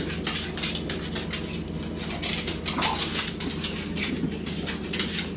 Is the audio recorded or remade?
recorded